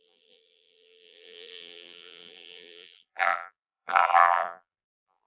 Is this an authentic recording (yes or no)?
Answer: no